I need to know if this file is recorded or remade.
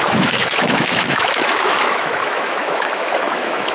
remade